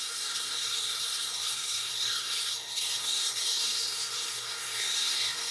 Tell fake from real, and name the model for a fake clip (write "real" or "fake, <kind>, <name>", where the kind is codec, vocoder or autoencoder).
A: fake, codec, SNAC